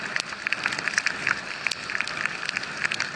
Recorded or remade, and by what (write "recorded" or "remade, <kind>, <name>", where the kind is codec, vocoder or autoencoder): remade, vocoder, BigVGAN v2